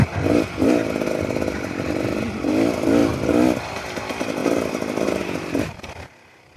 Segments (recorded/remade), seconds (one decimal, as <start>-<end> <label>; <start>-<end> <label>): 0.0-3.0 recorded; 3.0-3.6 remade; 3.6-4.4 recorded; 4.4-5.2 remade; 5.2-6.6 recorded